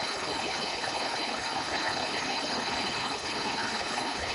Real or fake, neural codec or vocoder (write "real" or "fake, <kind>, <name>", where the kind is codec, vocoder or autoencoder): fake, codec, HILCodec